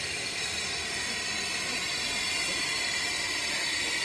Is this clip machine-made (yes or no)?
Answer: no